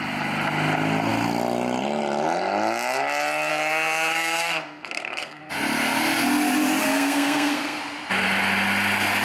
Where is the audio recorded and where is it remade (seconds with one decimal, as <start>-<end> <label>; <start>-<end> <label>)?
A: 0.0-3.5 recorded; 3.5-5.4 remade; 5.4-6.8 recorded; 6.8-7.8 remade; 7.8-9.2 recorded